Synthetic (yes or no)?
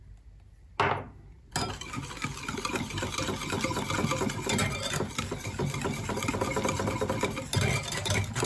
no